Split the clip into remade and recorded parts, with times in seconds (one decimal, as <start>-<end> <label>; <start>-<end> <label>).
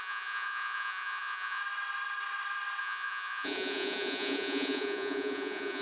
0.0-1.6 remade; 1.6-2.8 recorded; 2.8-5.8 remade